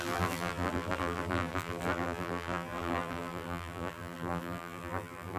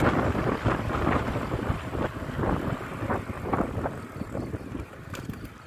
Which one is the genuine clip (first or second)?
second